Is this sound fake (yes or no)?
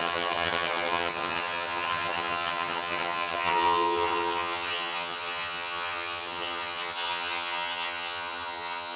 yes